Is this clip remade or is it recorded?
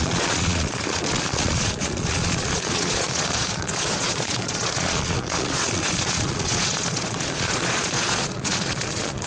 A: remade